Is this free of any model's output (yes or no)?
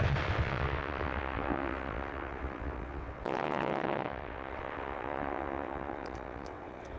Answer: no